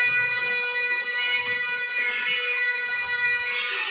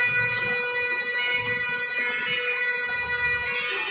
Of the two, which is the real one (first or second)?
second